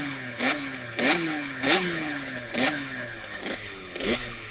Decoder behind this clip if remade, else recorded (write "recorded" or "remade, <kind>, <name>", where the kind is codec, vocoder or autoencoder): remade, codec, HILCodec